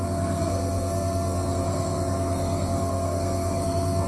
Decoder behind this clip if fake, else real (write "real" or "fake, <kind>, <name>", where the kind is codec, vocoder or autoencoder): fake, codec, SNAC